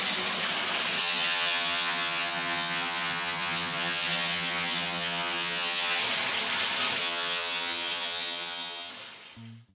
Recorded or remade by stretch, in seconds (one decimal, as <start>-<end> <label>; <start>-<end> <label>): 0.0-1.0 recorded; 1.0-6.0 remade; 6.0-7.0 recorded; 7.0-8.9 remade; 8.9-9.7 recorded